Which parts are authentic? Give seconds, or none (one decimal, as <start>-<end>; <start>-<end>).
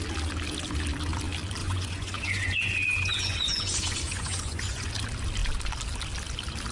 0.0-1.6; 4.9-6.7